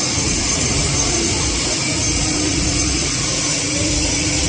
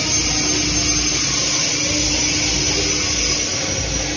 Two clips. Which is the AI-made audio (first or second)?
first